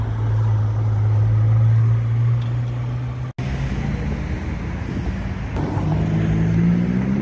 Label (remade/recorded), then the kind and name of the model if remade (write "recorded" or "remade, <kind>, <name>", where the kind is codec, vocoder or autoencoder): recorded